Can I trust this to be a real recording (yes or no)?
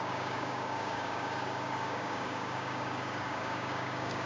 no